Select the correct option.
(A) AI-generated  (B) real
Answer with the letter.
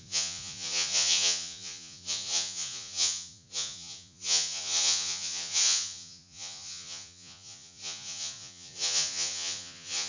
A